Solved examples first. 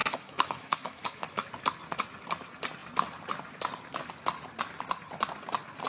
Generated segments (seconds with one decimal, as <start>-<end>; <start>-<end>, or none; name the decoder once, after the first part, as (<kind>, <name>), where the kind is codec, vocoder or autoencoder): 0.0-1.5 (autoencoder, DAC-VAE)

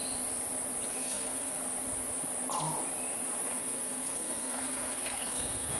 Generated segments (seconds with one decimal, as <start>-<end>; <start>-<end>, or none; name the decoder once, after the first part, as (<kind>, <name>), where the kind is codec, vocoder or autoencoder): 0.9-1.6 (codec, SNAC); 3.5-5.8

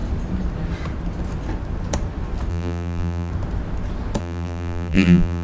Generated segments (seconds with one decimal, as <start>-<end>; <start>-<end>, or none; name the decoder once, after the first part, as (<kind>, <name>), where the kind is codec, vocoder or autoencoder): 2.5-3.3 (vocoder, BigVGAN v2); 4.2-5.4

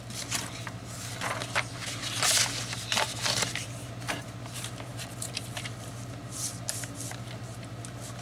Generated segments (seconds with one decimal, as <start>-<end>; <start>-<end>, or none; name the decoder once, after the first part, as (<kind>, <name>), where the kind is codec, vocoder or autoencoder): none

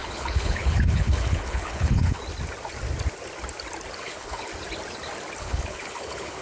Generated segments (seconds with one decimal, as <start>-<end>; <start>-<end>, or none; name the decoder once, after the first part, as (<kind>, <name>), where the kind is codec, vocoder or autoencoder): 0.0-2.2 (codec, HILCodec); 4.0-4.5; 5.4-6.4

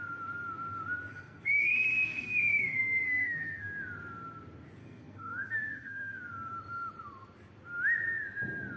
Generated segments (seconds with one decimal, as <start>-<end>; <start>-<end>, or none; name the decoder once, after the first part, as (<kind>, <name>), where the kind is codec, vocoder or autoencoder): 1.1-3.7 (codec, SNAC); 4.8-6.2